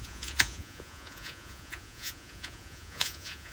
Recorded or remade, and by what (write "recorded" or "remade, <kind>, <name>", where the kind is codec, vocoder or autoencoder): remade, vocoder, Vocos